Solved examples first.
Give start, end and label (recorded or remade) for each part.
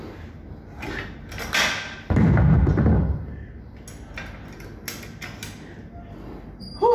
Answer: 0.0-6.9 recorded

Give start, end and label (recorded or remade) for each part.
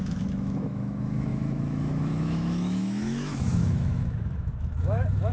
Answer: 0.0-5.3 remade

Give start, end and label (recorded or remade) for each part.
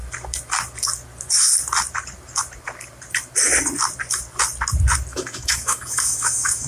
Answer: 0.0-5.1 recorded; 5.1-6.7 remade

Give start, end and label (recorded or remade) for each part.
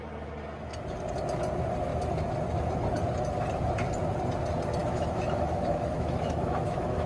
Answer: 0.0-4.8 recorded; 4.8-7.1 remade